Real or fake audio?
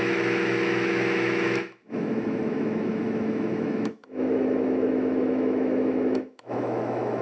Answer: fake